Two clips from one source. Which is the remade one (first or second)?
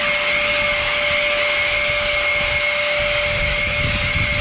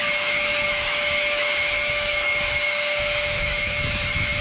second